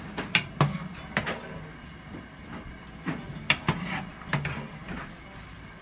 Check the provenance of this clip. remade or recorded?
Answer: recorded